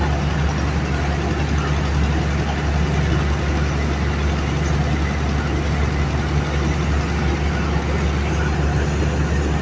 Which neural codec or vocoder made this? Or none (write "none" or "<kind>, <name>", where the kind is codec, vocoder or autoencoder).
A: none